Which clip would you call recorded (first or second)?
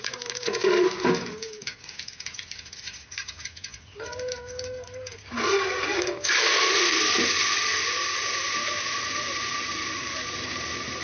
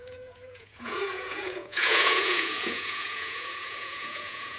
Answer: first